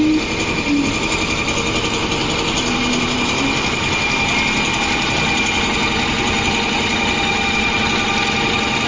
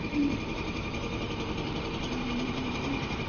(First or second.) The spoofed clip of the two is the second